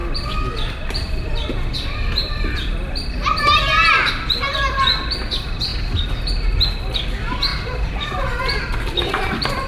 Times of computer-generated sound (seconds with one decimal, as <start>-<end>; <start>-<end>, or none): none